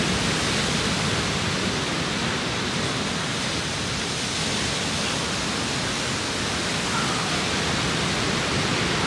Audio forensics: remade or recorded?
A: recorded